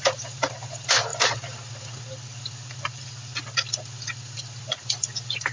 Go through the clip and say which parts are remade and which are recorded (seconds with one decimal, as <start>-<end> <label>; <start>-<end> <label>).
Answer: 0.0-5.5 recorded